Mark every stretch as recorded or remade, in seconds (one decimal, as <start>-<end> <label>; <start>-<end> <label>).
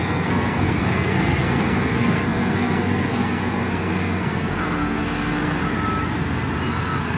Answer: 0.0-5.6 remade; 5.6-6.7 recorded; 6.7-7.2 remade